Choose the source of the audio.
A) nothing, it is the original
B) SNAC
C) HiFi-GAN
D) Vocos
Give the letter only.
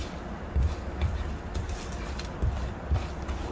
A